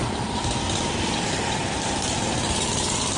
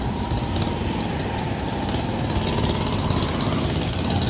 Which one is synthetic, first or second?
first